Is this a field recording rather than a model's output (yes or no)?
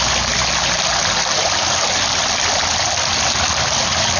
yes